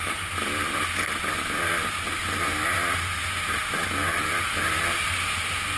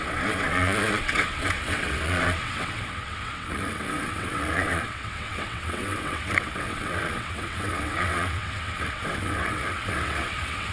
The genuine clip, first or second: first